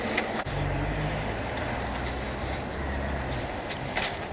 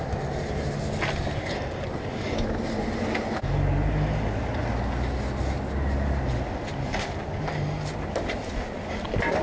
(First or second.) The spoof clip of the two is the first